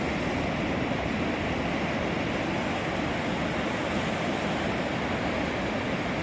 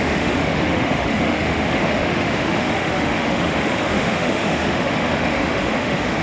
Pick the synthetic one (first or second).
second